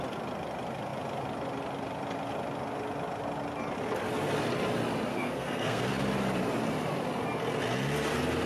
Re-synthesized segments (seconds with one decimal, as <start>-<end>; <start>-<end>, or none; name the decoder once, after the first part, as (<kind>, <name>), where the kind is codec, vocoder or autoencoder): 5.1-5.9 (codec, SNAC)